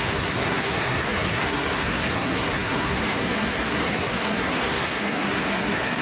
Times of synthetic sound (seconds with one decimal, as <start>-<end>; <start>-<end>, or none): 0.0-6.0